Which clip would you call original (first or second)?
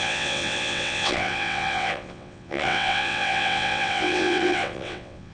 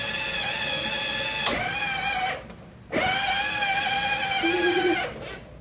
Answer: second